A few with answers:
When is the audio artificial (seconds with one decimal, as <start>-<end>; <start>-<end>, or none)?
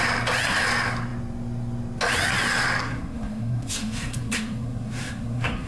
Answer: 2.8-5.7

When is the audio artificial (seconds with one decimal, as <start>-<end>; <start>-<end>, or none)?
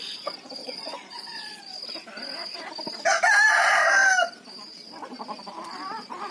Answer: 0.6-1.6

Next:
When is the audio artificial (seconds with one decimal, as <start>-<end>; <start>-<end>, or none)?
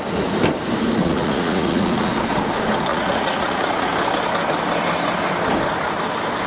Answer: 1.0-2.1; 2.9-3.9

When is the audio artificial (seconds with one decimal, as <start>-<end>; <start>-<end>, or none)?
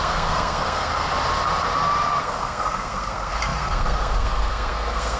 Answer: 0.0-0.9; 2.2-5.2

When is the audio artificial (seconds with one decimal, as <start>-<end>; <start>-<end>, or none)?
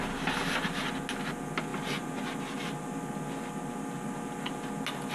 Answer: none